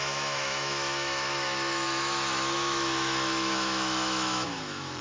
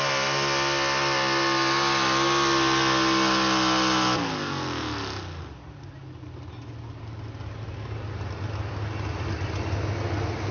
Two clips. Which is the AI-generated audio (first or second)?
first